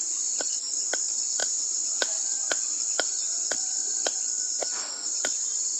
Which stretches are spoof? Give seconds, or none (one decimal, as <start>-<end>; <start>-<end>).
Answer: none